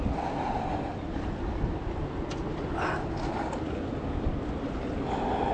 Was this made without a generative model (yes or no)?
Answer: yes